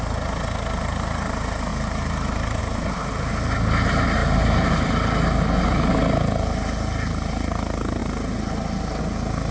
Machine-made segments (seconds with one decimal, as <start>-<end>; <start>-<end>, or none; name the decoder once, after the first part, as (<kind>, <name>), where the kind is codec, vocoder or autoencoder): 4.2-4.9 (vocoder, BigVGAN v2)